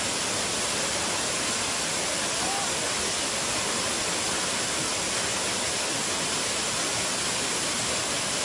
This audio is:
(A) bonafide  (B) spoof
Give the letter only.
A